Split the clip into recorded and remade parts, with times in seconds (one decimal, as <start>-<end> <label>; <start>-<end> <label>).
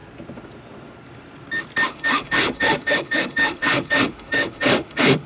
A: 0.0-1.9 recorded; 1.9-5.3 remade